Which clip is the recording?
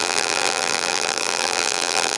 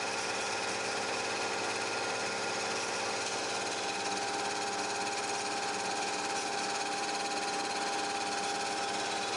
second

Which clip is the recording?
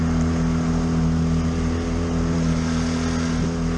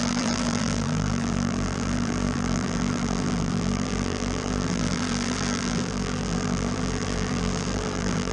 first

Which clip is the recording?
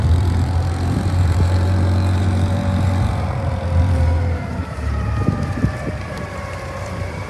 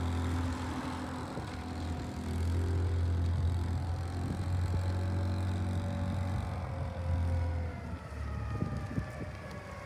second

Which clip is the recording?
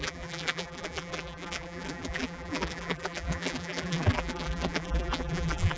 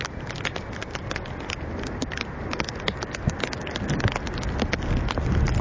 second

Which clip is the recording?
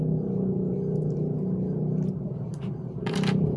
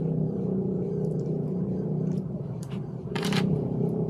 first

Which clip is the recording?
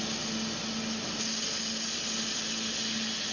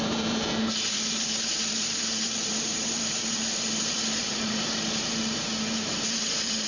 first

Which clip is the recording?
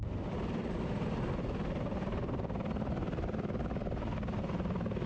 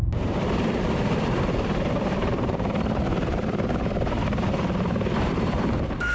first